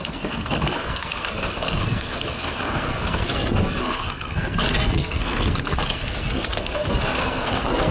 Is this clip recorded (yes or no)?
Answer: no